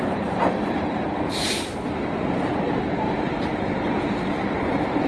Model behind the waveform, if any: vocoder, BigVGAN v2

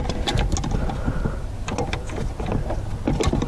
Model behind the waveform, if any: none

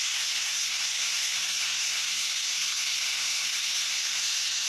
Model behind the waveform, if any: codec, SNAC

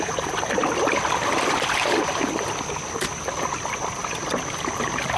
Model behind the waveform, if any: none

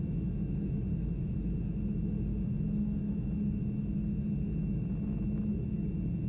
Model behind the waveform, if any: autoencoder, DAC-VAE